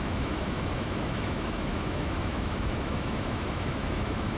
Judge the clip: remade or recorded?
remade